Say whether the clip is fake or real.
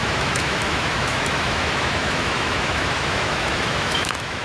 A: fake